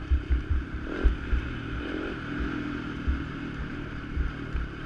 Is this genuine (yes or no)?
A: no